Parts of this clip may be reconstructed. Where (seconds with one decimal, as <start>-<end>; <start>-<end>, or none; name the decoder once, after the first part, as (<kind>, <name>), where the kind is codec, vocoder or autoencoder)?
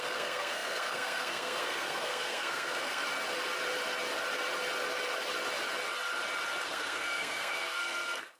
0.0-3.0 (codec, SNAC); 6.7-8.4